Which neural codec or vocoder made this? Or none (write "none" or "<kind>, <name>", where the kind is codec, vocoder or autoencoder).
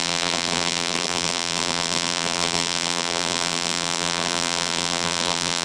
vocoder, BigVGAN v2